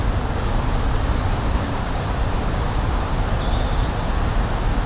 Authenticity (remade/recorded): recorded